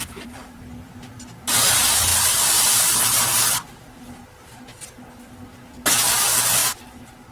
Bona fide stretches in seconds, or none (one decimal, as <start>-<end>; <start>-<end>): 0.6-7.3